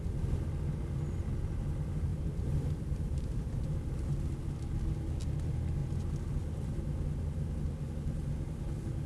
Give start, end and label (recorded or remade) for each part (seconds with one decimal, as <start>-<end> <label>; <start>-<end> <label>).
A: 0.0-2.1 recorded; 2.1-4.4 remade; 4.4-5.8 recorded; 5.8-6.9 remade; 6.9-9.1 recorded